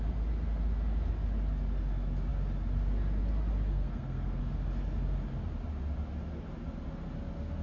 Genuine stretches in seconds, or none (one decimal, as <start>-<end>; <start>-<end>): 0.0-3.7; 4.4-7.6